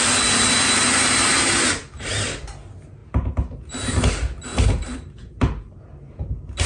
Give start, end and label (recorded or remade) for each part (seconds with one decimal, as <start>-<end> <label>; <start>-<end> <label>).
0.0-4.5 recorded; 4.5-5.7 remade; 5.7-6.7 recorded